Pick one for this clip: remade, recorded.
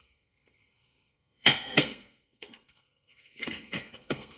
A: remade